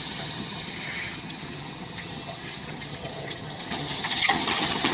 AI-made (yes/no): yes